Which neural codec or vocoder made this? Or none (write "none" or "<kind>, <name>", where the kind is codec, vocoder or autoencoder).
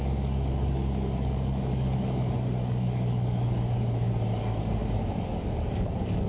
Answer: codec, DAC